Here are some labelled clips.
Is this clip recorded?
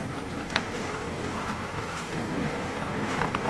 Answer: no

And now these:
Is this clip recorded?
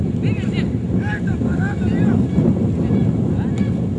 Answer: yes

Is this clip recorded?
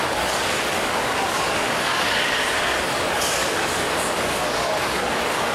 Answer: no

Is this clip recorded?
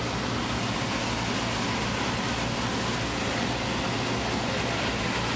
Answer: yes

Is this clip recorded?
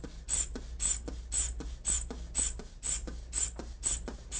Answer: yes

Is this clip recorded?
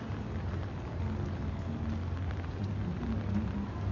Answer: yes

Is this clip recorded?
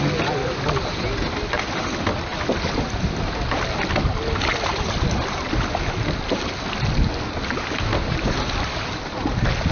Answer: yes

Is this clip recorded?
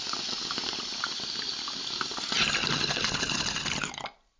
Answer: yes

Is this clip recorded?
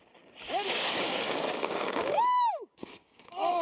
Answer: no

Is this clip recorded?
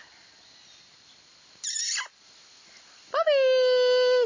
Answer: yes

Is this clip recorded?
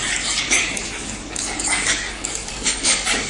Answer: no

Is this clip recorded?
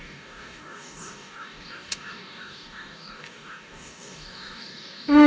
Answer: no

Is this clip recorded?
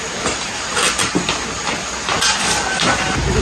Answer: yes